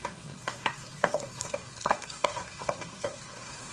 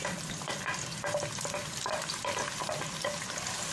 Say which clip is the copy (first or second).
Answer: first